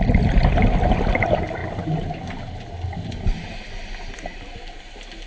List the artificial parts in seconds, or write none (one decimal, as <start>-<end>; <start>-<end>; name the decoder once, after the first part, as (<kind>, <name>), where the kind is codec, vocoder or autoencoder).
none